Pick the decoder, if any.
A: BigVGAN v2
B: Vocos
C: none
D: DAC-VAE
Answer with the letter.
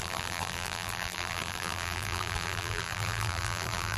A